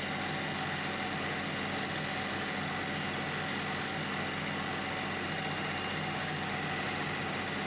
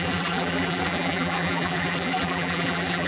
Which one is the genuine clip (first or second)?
first